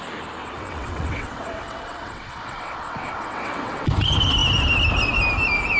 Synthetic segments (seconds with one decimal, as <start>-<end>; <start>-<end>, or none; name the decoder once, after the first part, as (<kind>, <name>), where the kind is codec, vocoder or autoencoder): 0.4-3.9 (vocoder, WaveNeXt)